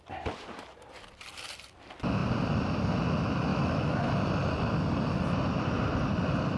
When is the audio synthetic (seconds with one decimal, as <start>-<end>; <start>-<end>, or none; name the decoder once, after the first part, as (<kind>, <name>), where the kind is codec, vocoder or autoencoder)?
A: 3.5-4.1 (autoencoder, DAC-VAE)

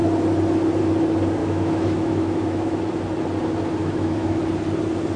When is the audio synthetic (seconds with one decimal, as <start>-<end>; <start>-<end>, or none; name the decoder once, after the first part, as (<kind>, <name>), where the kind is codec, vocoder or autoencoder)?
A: 1.4-2.8 (autoencoder, DAC-VAE); 3.8-4.4

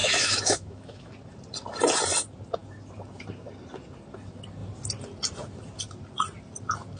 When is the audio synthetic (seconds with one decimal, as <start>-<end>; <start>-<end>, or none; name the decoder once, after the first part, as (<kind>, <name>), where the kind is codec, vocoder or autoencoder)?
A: 0.0-1.1 (autoencoder, DAC-VAE)

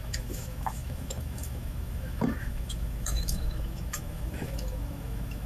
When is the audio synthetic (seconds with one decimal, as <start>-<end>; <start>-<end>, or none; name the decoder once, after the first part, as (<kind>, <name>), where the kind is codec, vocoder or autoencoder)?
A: 0.0-5.5 (autoencoder, DAC-VAE)

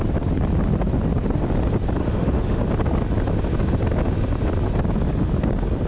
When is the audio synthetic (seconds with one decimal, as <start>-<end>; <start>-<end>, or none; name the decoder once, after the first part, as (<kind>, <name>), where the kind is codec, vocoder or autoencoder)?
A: 2.0-2.6 (autoencoder, DAC-VAE)

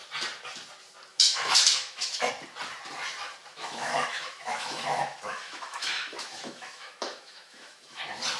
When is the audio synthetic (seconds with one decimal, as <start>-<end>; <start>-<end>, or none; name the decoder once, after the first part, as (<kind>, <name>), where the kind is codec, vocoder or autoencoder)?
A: 1.1-2.3 (autoencoder, DAC-VAE); 3.5-8.0